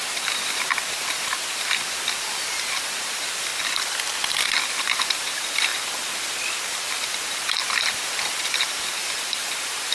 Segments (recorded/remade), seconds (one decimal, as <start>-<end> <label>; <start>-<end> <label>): 0.0-3.5 remade; 3.5-4.8 recorded; 4.8-5.7 remade; 5.7-7.0 recorded; 7.0-9.9 remade